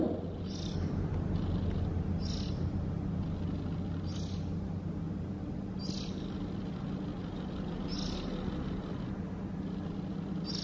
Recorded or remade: recorded